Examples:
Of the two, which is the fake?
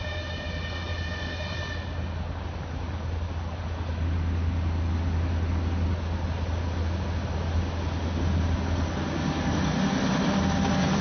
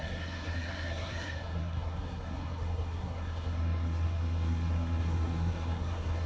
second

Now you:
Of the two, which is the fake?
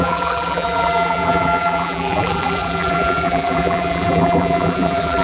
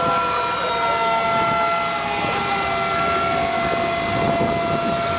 first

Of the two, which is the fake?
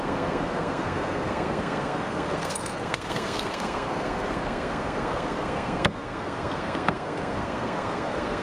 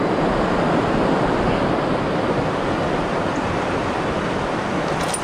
first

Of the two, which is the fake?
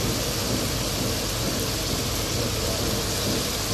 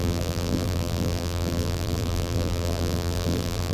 second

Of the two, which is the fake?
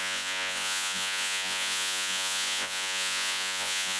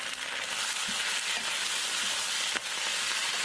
first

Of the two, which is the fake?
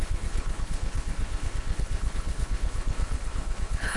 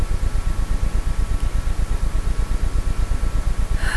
first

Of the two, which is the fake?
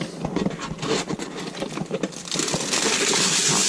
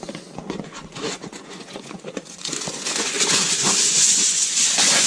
second